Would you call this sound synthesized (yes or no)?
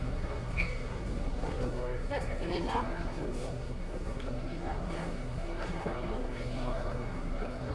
yes